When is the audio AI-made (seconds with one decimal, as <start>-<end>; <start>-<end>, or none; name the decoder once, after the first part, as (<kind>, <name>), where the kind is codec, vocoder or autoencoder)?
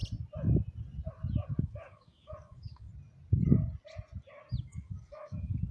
1.6-2.9 (codec, DAC); 4.6-5.7